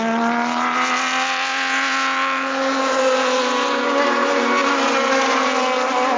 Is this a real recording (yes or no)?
yes